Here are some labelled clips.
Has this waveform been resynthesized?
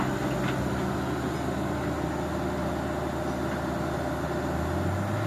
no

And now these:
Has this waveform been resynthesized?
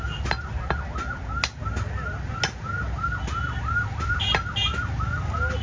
no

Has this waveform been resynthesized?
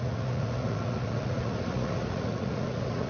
yes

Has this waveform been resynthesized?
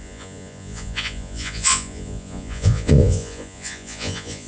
yes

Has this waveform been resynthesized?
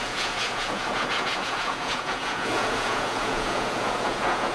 yes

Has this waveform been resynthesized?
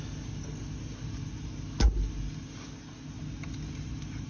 no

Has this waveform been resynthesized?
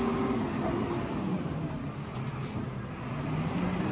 no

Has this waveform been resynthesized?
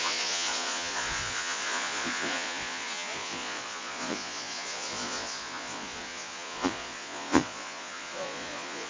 yes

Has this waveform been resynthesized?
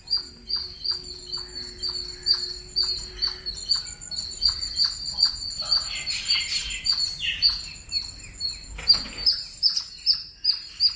no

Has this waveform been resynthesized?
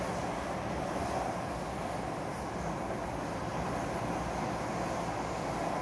no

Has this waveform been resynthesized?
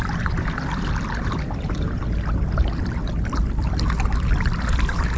no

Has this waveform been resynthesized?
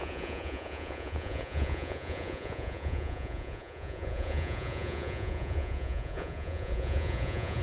yes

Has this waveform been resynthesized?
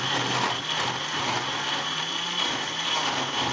no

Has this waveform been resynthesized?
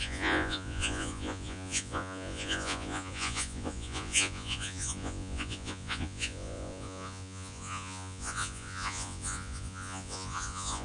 yes